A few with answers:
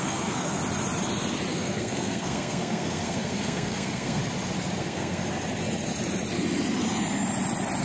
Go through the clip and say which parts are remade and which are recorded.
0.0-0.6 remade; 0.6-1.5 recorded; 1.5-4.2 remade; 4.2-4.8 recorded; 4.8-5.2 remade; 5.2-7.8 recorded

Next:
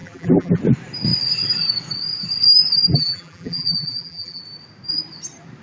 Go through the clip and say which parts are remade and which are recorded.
0.0-0.6 remade; 0.6-2.9 recorded; 2.9-4.4 remade; 4.4-5.6 recorded